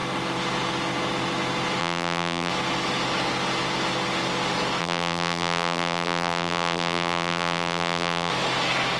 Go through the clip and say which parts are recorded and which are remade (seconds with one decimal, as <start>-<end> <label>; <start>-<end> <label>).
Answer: 0.0-1.8 recorded; 1.8-2.5 remade; 2.5-4.8 recorded; 4.8-8.3 remade; 8.3-9.0 recorded